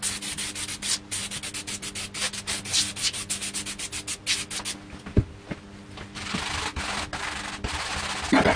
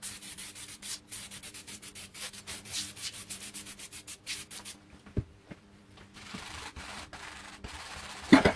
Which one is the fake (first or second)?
second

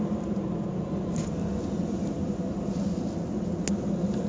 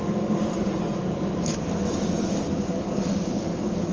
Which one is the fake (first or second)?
second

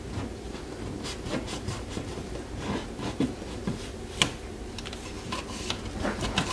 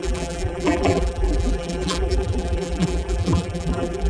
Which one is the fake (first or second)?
second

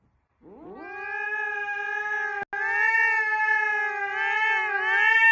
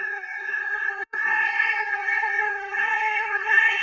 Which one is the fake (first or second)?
second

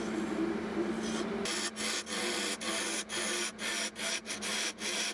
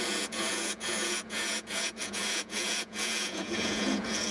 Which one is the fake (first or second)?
second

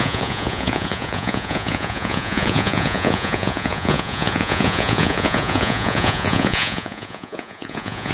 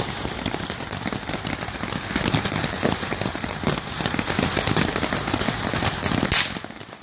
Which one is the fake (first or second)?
first